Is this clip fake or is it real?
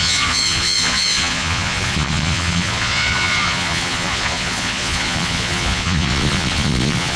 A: fake